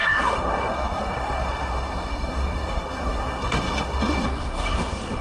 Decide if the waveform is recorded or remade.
remade